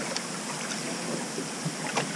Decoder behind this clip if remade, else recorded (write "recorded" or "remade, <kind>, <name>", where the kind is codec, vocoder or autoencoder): recorded